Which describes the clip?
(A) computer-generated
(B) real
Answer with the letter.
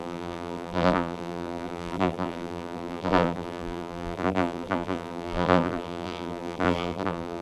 A